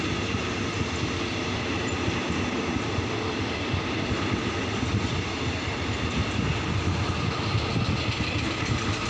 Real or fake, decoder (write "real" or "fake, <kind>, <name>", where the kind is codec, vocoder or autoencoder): real